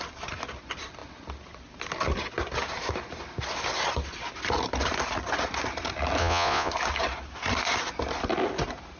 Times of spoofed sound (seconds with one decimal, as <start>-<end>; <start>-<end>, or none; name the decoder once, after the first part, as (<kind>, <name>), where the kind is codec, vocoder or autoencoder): 6.2-6.7 (vocoder, Vocos)